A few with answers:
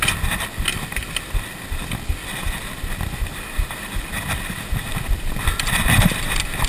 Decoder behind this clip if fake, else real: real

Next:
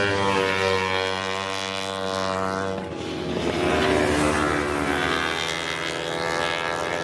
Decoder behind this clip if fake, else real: real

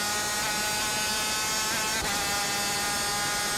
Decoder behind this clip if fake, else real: real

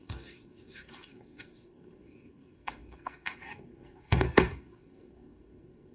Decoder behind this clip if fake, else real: fake, codec, SNAC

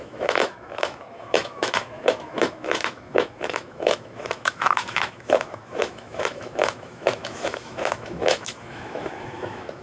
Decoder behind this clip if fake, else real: fake, autoencoder, DAC-VAE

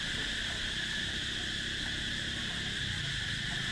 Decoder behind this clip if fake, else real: real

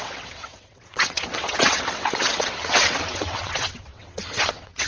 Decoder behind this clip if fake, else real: fake, vocoder, WaveNeXt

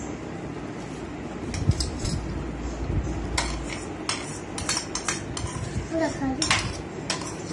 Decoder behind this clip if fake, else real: real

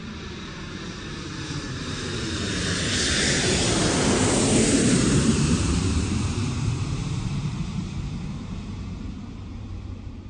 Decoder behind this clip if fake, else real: fake, vocoder, BigVGAN v2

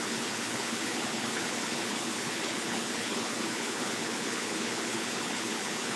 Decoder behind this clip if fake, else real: fake, codec, HILCodec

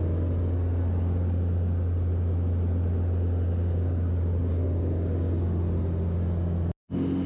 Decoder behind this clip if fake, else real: real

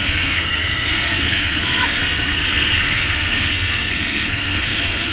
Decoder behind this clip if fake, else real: fake, codec, SNAC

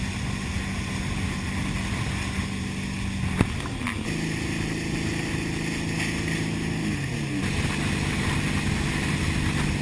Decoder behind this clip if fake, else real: real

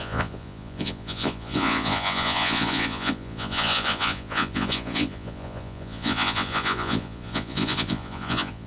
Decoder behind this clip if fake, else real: fake, vocoder, Vocos